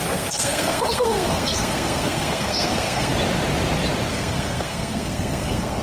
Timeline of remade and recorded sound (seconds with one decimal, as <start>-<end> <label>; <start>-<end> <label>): 0.0-3.1 remade; 3.1-4.1 recorded; 4.1-5.8 remade